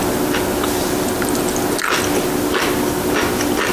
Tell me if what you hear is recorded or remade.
recorded